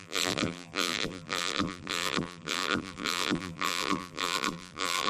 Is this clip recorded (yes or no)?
no